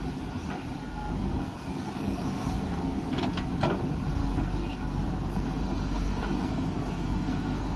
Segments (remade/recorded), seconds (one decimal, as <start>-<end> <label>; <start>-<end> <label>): 0.0-0.8 recorded; 0.8-3.5 remade; 3.5-4.2 recorded; 4.2-7.8 remade